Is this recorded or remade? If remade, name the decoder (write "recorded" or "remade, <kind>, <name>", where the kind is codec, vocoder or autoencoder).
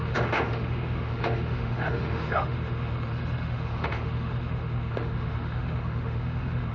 remade, autoencoder, DAC-VAE